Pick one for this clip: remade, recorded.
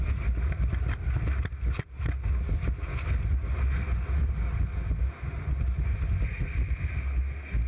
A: recorded